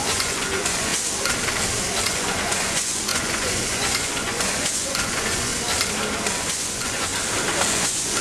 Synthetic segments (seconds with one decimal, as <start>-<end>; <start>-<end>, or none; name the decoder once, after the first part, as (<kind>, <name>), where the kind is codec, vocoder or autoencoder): 0.0-0.9 (vocoder, Vocos); 2.0-5.5; 6.4-7.1; 7.7-8.2